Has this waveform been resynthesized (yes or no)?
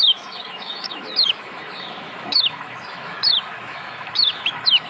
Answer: yes